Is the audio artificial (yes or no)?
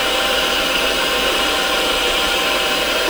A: yes